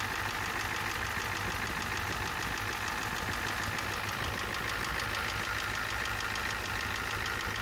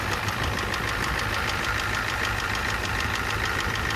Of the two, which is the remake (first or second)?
second